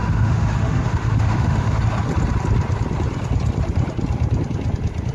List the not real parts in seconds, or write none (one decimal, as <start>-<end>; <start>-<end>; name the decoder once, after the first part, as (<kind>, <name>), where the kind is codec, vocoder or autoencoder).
0.0-1.8 (autoencoder, DAC-VAE)